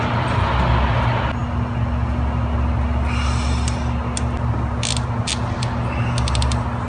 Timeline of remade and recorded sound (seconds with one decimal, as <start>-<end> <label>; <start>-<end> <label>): 0.0-6.9 recorded